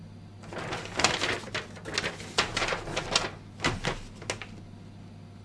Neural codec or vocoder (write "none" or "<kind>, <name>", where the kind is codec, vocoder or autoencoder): none